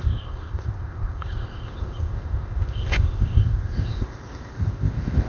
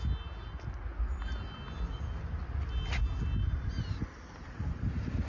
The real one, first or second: second